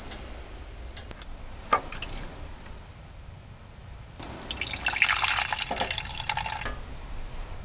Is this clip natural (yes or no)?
yes